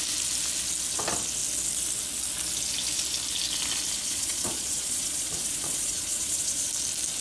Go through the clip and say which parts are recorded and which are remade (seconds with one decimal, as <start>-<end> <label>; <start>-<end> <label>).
0.0-4.0 recorded; 4.0-6.7 remade; 6.7-7.2 recorded